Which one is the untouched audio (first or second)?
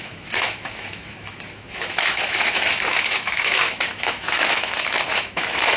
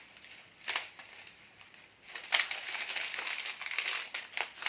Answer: second